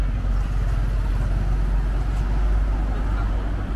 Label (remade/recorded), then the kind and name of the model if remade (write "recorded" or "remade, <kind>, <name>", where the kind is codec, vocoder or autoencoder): recorded